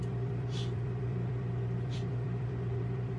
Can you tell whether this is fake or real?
fake